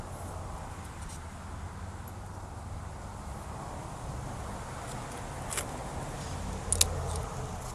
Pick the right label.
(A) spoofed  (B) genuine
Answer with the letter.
B